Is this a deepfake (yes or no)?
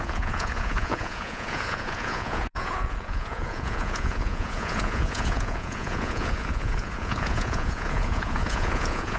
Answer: yes